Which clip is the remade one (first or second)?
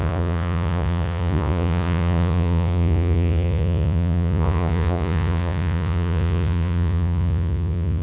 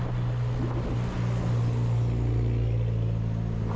first